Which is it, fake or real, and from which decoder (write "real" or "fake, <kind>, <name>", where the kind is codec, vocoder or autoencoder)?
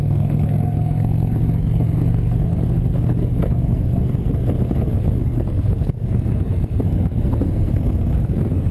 fake, codec, SNAC